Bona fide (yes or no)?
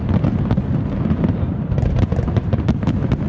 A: yes